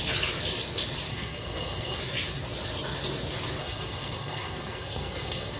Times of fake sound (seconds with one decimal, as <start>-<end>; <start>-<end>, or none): 1.1-2.0; 3.6-5.6